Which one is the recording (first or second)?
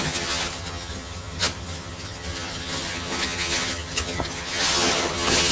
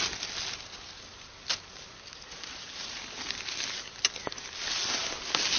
second